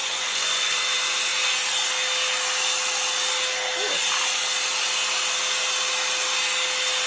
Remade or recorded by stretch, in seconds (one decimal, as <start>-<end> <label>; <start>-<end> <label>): 0.0-0.8 remade; 0.8-7.1 recorded